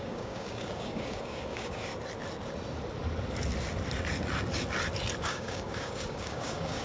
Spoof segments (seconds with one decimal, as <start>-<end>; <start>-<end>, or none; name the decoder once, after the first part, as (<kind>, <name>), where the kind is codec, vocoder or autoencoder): 0.0-1.9 (codec, DAC); 5.2-6.8